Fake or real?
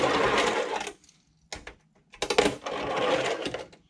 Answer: real